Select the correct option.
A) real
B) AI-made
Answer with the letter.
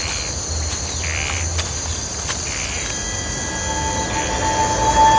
A